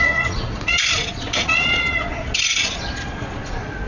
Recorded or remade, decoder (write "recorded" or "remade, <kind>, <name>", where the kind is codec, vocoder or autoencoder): remade, vocoder, Vocos